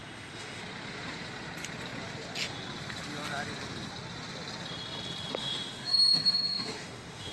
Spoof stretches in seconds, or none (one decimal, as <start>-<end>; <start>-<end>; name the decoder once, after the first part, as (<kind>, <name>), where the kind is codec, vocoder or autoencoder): 0.0-0.6 (autoencoder, DAC-VAE); 5.4-7.3